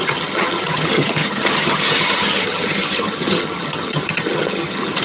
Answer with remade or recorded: remade